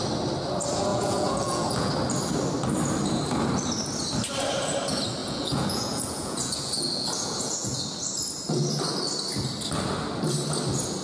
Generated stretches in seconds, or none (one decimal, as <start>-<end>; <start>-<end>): 0.9-1.9; 5.2-7.8